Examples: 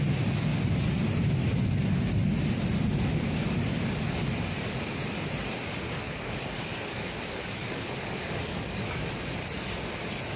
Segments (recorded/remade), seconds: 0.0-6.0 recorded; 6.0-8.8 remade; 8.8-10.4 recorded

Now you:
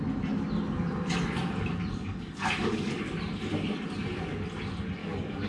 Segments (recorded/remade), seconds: 0.0-2.0 recorded; 2.0-3.0 remade; 3.0-5.0 recorded; 5.0-5.5 remade

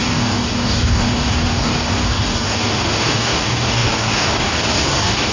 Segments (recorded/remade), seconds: 0.0-5.3 remade

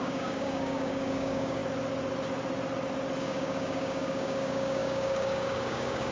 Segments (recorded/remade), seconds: 0.0-1.6 remade; 1.6-3.2 recorded; 3.2-6.1 remade

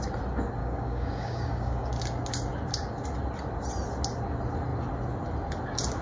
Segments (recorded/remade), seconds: 0.0-0.6 recorded; 0.6-1.9 remade; 1.9-6.0 recorded

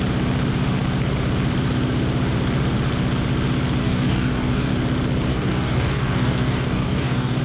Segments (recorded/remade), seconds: 0.0-3.8 recorded; 3.8-4.7 remade; 4.7-5.3 recorded; 5.3-7.4 remade